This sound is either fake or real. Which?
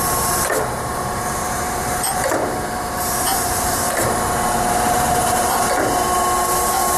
fake